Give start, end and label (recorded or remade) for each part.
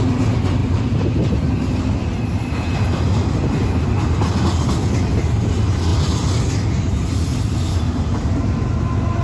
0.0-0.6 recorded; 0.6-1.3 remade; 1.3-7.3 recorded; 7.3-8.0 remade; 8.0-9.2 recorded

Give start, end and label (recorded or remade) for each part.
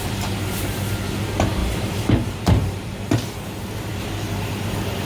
0.0-1.6 recorded; 1.6-3.4 remade; 3.4-5.1 recorded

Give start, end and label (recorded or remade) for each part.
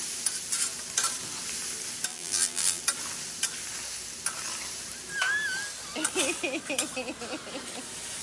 0.0-2.1 recorded; 2.1-2.8 remade; 2.8-8.2 recorded